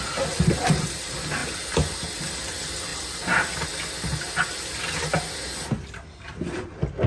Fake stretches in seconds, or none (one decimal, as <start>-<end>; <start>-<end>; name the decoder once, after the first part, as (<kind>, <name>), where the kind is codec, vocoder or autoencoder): none